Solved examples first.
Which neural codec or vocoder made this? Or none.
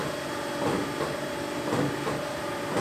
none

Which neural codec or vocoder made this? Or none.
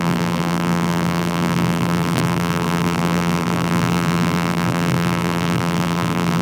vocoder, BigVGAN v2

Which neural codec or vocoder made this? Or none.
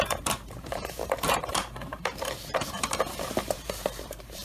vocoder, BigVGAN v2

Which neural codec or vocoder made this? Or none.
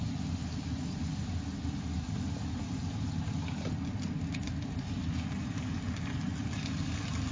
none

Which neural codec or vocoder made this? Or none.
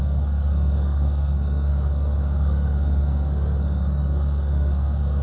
codec, SNAC